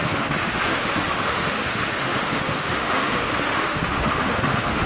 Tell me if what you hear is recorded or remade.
remade